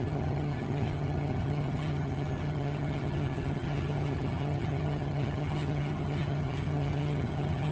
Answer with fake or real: fake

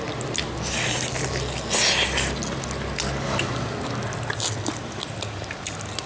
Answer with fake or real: real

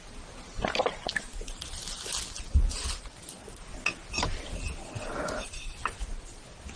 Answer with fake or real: real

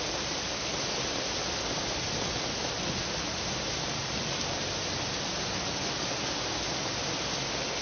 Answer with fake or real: real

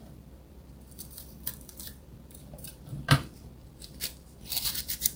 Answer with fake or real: fake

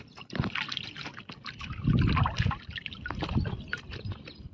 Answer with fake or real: real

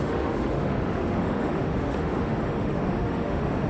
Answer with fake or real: fake